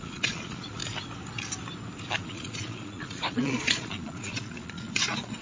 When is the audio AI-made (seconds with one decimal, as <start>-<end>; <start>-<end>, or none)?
0.0-0.8; 2.2-5.4